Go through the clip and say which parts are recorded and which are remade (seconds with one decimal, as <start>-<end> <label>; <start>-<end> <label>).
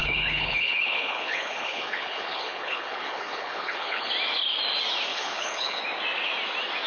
0.0-4.1 remade; 4.1-5.1 recorded; 5.1-5.8 remade; 5.8-6.9 recorded